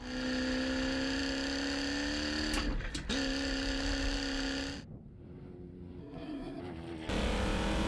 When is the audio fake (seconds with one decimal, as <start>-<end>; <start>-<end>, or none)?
6.0-6.6